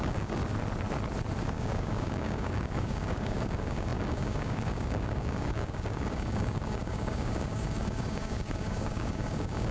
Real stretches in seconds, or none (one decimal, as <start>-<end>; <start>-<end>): 0.4-1.4